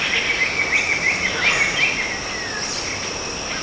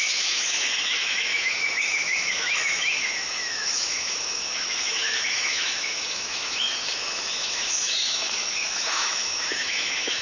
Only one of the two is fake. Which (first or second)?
second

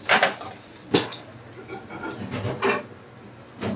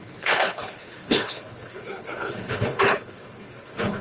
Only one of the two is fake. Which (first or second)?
second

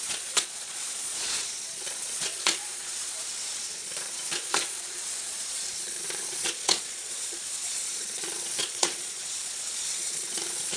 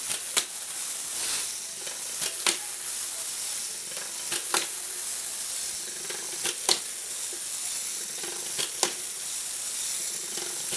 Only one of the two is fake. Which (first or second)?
first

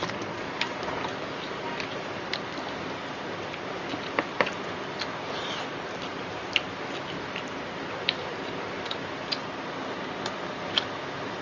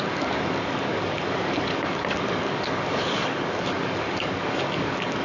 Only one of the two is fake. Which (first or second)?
second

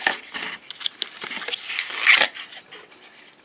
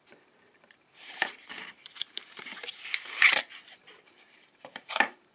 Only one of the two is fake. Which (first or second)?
second